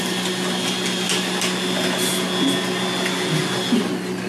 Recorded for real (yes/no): yes